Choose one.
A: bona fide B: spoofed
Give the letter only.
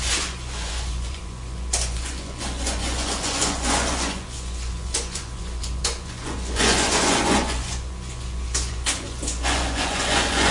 B